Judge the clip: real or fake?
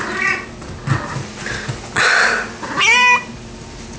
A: real